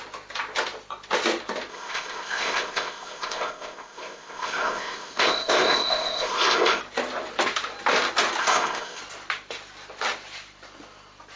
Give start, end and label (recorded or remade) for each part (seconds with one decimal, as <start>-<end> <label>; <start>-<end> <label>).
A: 0.0-1.7 recorded; 1.7-6.8 remade; 6.8-8.4 recorded; 8.4-9.0 remade; 9.0-11.4 recorded